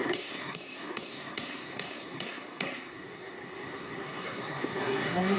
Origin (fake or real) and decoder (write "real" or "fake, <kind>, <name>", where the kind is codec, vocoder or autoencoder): fake, codec, SNAC